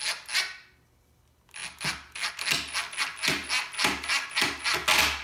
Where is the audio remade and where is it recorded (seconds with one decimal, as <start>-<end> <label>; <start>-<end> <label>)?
0.0-5.2 recorded